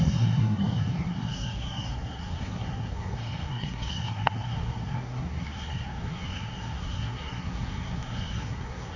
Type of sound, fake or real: fake